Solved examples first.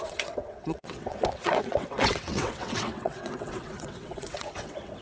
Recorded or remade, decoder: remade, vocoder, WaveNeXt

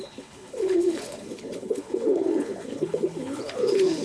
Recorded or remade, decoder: remade, codec, HILCodec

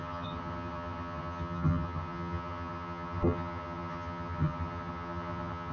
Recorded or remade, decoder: remade, vocoder, HiFi-GAN